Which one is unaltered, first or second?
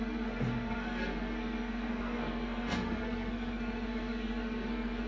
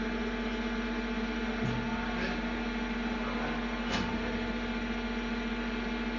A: second